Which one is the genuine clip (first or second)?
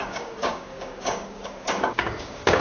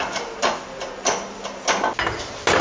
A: second